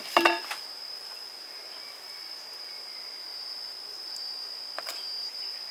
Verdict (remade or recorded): recorded